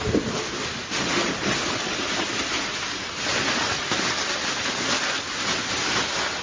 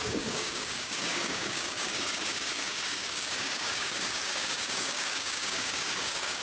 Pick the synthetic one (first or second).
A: second